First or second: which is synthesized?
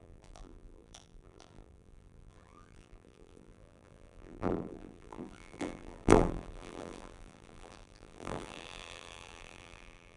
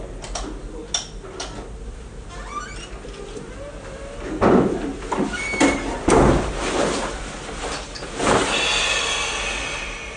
first